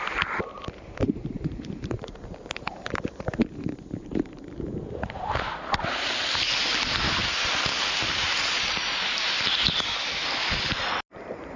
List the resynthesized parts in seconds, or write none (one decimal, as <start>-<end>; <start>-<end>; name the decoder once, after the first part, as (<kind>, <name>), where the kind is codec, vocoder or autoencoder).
0.5-5.3 (vocoder, BigVGAN v2)